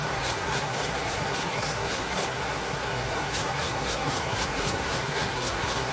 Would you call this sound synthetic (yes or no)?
yes